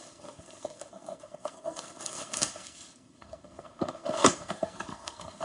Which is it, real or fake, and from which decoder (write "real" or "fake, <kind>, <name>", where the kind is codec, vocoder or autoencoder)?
fake, codec, SNAC